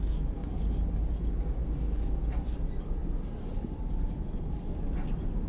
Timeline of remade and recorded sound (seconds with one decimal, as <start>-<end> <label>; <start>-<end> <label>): 0.0-5.5 recorded